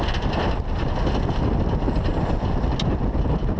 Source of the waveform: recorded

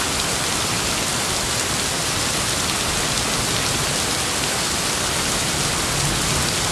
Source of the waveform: recorded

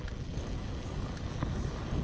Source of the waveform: recorded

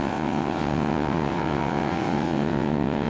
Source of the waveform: remade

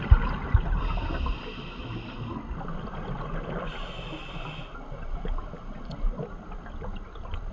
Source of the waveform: recorded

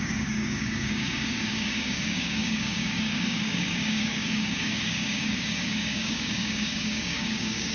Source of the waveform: remade